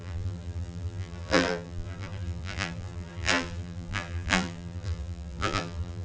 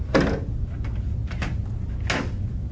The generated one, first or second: first